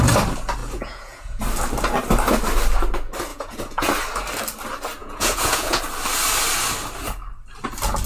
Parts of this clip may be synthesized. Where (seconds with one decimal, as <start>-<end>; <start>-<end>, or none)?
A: 0.6-1.4; 3.3-3.9; 5.0-5.8